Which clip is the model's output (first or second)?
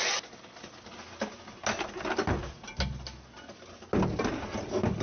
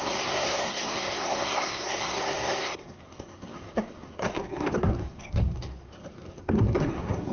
second